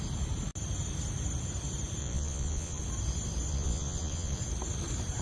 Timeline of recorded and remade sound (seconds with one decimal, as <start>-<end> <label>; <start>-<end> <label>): 0.0-2.0 recorded; 2.0-2.8 remade; 2.8-3.5 recorded; 3.5-4.4 remade; 4.4-5.2 recorded